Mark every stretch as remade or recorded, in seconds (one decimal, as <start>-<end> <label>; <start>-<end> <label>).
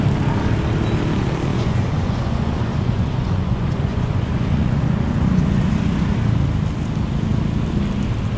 0.0-1.5 recorded; 1.5-5.7 remade; 5.7-8.4 recorded